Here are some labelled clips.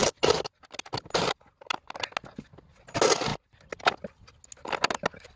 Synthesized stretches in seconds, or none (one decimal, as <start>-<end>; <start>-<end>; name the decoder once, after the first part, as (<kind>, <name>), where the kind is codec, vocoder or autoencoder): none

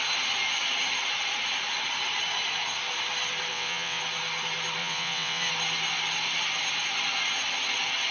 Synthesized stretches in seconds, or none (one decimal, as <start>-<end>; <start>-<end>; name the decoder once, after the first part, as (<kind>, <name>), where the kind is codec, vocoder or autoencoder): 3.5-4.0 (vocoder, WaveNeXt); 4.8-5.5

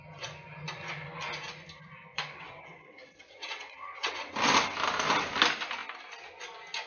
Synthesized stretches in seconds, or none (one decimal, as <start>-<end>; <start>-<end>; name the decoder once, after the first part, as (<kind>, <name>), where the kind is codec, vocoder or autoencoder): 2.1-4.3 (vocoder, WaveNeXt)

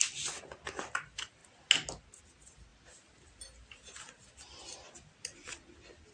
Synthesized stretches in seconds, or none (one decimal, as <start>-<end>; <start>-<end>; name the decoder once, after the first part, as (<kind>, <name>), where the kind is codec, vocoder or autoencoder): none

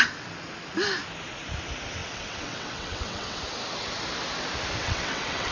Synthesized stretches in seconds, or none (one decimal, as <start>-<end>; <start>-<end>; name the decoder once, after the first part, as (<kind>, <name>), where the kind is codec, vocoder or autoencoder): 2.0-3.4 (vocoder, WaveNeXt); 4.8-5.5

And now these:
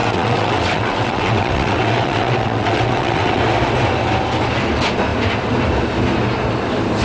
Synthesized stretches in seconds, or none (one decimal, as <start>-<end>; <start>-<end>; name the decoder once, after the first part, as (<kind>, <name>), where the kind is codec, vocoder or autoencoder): 0.0-3.4 (vocoder, WaveNeXt)